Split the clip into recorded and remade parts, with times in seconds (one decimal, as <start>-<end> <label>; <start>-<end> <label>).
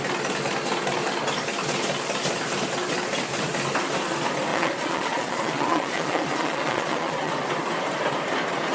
0.0-4.5 recorded; 4.5-7.3 remade; 7.3-8.7 recorded